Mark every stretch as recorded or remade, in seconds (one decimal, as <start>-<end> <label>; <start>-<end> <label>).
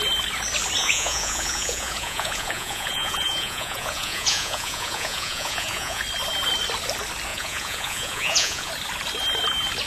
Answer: 0.0-0.8 recorded; 0.8-6.0 remade; 6.0-7.3 recorded; 7.3-8.7 remade; 8.7-9.9 recorded